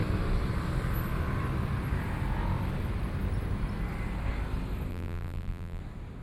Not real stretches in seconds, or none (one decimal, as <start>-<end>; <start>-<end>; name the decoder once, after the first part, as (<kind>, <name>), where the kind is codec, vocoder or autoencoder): 4.9-5.8 (vocoder, BigVGAN v2)